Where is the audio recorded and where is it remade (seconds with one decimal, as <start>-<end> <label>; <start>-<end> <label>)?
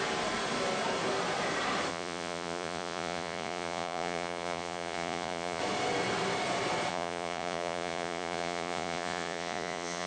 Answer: 0.0-1.9 recorded; 1.9-5.6 remade; 5.6-6.9 recorded; 6.9-10.1 remade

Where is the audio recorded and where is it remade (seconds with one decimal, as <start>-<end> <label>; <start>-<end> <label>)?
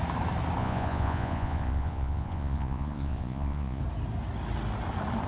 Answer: 0.0-0.6 recorded; 0.6-3.8 remade; 3.8-5.3 recorded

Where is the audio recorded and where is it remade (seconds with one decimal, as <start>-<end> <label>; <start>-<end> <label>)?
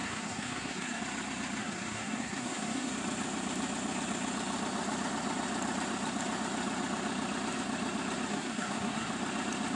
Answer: 0.0-1.0 remade; 1.0-1.6 recorded; 1.6-2.9 remade; 2.9-8.3 recorded; 8.3-9.1 remade; 9.1-9.8 recorded